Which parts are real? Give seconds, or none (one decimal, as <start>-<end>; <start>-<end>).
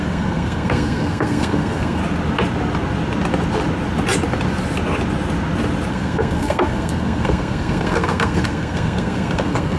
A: 2.0-5.9